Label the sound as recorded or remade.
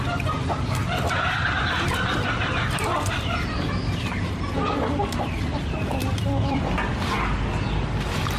recorded